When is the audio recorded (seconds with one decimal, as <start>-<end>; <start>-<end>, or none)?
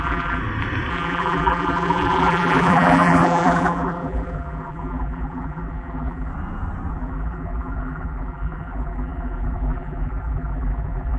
0.4-0.9; 6.3-6.9